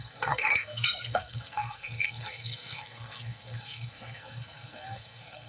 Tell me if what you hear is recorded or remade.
remade